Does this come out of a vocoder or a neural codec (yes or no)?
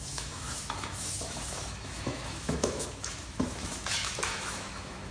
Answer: yes